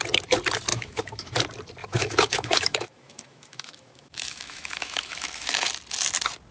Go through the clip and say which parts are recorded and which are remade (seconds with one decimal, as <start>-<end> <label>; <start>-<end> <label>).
0.0-0.7 recorded; 0.7-1.3 remade; 1.3-1.8 recorded; 1.8-5.7 remade; 5.7-6.5 recorded